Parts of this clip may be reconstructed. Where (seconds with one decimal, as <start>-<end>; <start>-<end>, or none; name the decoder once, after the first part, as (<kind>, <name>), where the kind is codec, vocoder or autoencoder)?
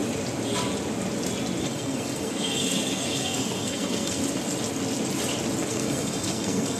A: 1.6-4.2 (codec, SNAC); 5.7-6.8